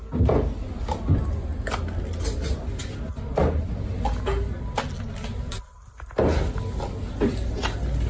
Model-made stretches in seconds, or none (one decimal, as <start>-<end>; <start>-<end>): none